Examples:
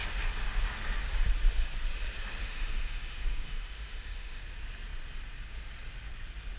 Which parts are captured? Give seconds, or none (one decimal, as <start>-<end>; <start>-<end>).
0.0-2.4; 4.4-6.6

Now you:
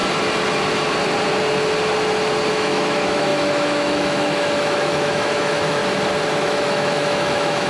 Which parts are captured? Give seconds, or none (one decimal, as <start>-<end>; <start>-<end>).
0.0-2.5; 5.8-6.3

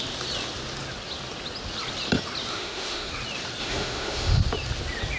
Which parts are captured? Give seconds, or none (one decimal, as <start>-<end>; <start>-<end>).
0.0-2.5; 3.1-3.6; 4.4-5.2